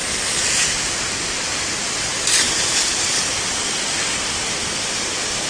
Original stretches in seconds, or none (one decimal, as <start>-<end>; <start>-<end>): 0.0-5.5